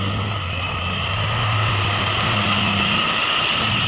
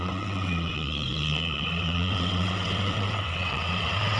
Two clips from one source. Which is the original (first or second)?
first